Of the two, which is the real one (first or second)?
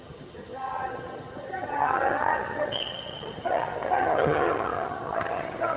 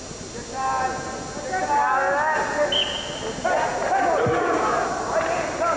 second